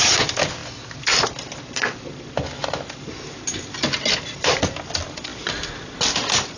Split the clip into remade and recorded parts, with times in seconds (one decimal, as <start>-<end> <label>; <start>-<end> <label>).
0.0-6.6 recorded